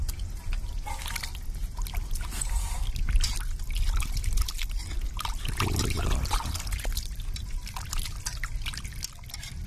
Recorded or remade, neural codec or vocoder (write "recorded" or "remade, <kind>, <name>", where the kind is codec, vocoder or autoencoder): recorded